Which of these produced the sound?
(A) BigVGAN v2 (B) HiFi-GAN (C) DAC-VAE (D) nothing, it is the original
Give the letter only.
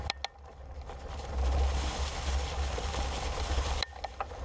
D